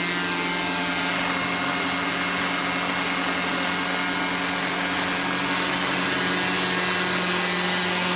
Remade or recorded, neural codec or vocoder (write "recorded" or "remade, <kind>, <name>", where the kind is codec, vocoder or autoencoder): recorded